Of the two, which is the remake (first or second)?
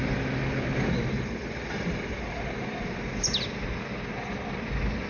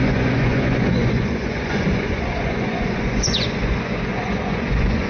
second